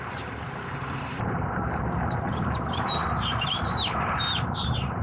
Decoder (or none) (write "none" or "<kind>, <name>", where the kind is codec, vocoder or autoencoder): vocoder, BigVGAN v2